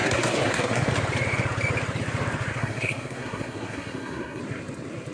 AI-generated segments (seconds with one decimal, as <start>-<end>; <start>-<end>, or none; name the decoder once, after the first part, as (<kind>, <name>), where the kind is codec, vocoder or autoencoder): 0.0-0.9 (codec, SNAC); 2.5-4.4